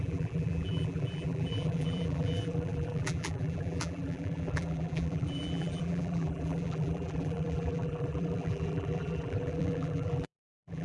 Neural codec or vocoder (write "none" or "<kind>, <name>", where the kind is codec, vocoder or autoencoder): vocoder, BigVGAN v2